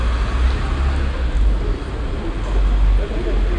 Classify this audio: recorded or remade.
recorded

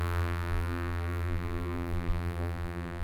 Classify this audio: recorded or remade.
remade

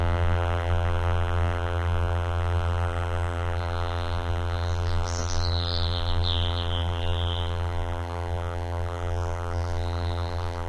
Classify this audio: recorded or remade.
remade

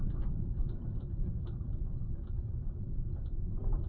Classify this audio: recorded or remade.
remade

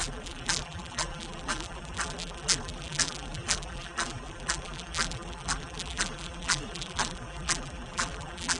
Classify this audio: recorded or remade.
remade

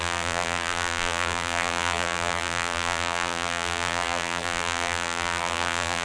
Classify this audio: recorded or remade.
remade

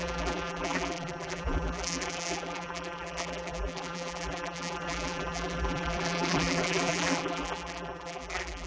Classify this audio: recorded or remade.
remade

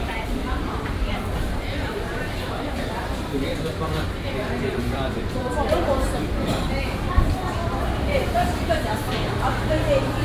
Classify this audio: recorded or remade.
remade